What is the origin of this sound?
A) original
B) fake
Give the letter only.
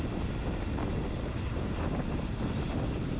A